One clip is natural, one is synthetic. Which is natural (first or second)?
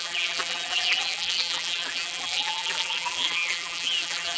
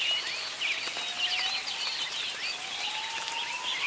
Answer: second